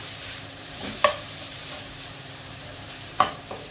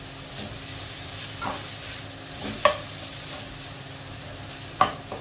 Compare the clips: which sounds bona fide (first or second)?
second